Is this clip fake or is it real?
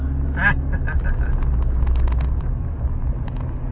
real